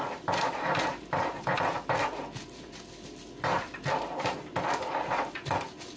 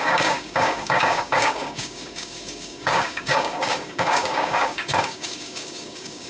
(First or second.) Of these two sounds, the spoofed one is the second